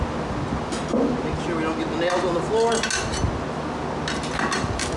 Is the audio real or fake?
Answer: real